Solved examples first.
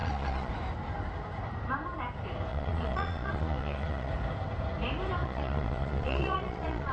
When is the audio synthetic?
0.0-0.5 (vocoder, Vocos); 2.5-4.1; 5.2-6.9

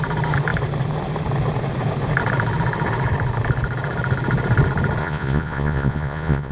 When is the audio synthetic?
5.0-6.5 (vocoder, Vocos)

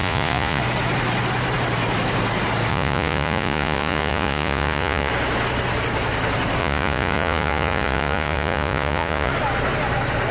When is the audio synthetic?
0.0-0.6 (vocoder, Vocos); 2.7-5.1; 6.6-9.3

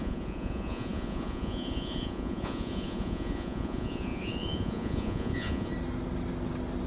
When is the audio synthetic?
0.0-5.7 (vocoder, Vocos)

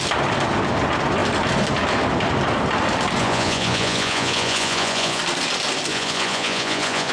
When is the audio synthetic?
3.2-5.2 (vocoder, Vocos); 5.9-7.1

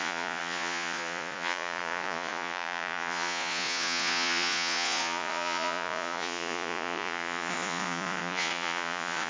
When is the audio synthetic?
0.0-9.3 (vocoder, Vocos)

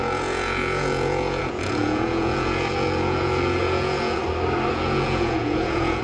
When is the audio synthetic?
0.0-4.2 (vocoder, Vocos); 4.7-6.0